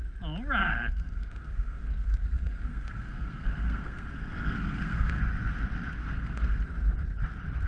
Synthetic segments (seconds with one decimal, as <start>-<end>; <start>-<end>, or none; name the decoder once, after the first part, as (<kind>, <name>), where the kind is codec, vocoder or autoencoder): 0.6-5.2 (codec, SNAC); 6.0-6.6